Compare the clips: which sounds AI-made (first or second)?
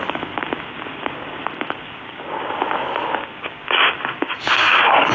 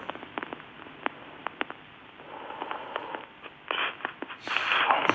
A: first